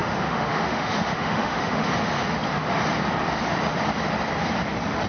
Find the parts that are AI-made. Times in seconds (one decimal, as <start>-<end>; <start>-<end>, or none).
0.0-1.9